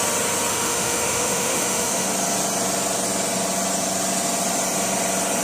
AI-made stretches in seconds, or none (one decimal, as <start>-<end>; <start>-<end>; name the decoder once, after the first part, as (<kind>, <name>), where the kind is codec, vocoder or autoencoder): 0.5-2.1 (autoencoder, DAC-VAE)